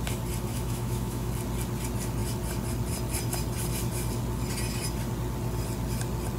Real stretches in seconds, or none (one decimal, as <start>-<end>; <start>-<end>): 0.0-0.5; 1.3-6.4